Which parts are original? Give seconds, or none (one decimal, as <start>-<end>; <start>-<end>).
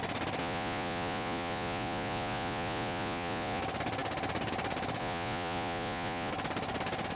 0.0-0.4; 3.6-5.0; 6.3-7.2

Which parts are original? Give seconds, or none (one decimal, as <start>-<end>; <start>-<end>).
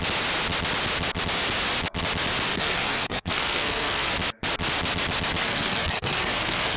0.0-2.5; 4.1-5.4